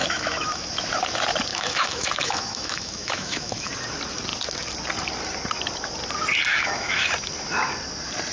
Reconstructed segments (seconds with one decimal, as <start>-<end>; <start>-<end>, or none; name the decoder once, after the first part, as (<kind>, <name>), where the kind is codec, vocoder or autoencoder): 0.0-0.7 (autoencoder, DAC-VAE); 1.5-3.7; 6.5-7.1